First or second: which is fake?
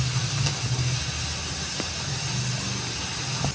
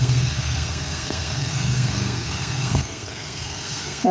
second